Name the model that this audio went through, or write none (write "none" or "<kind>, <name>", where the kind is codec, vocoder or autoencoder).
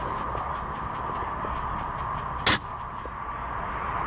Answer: none